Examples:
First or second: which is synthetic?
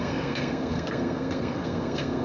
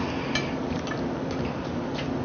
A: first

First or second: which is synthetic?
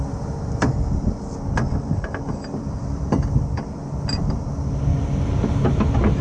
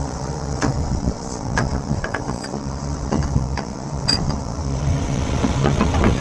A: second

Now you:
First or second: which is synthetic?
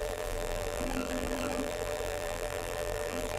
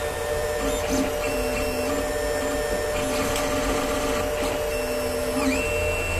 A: first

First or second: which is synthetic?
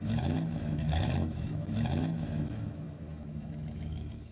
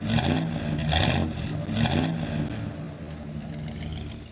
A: first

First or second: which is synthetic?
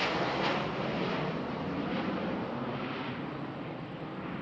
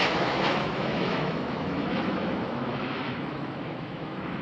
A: second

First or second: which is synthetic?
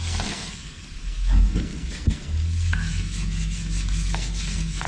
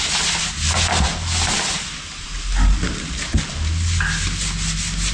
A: first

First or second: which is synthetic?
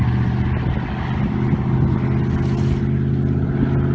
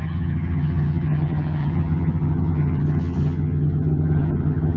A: second